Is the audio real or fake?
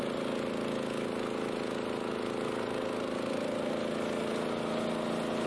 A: real